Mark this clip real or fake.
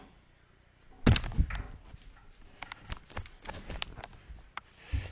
real